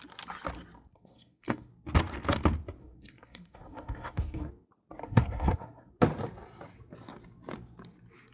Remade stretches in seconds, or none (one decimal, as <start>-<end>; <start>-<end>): 0.9-1.7; 2.8-4.5; 5.0-5.9